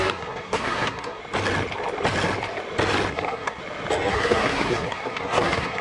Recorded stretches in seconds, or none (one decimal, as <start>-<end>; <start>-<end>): 1.2-3.1; 3.6-4.1

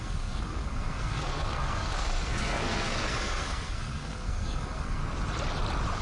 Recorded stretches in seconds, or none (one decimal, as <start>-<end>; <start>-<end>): 5.0-6.0

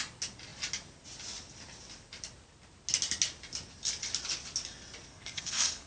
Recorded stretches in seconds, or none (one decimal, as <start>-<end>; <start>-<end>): 0.0-5.1